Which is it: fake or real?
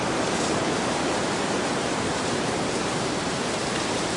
fake